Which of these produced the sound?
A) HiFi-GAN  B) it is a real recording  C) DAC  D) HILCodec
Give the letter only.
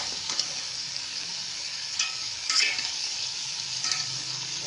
C